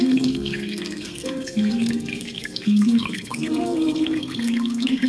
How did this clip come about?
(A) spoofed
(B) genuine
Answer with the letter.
A